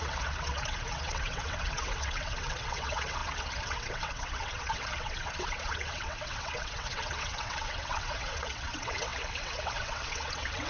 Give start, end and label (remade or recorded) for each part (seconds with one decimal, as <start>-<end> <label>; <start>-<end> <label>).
0.0-10.7 remade